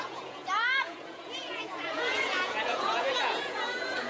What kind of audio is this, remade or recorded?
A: remade